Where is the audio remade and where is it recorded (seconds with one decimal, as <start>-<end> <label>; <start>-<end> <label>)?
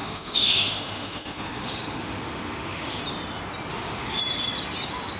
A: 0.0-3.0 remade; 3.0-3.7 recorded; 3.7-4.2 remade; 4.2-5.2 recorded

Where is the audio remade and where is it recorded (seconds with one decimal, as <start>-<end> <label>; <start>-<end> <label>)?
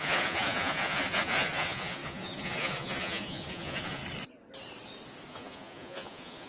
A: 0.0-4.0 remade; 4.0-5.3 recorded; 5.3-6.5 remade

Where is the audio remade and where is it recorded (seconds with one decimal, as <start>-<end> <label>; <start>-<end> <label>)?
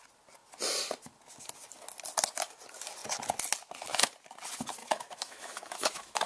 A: 0.0-4.8 recorded; 4.8-6.3 remade